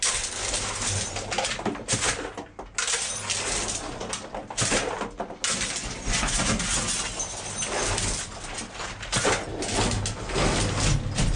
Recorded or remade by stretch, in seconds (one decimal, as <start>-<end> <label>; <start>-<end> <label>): 0.0-11.4 recorded